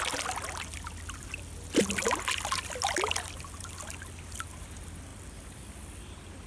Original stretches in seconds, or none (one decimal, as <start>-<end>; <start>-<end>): 0.0-6.5